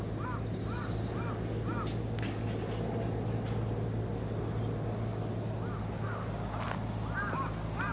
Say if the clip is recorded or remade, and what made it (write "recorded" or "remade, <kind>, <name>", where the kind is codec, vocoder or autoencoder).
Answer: recorded